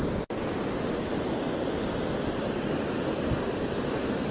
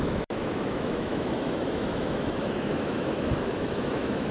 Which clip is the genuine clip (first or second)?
first